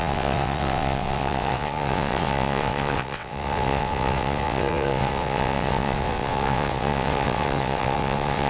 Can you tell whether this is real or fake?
fake